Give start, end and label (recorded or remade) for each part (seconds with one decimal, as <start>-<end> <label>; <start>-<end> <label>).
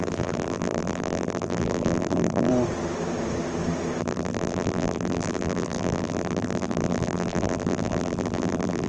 0.0-2.5 remade; 2.5-4.0 recorded; 4.0-8.9 remade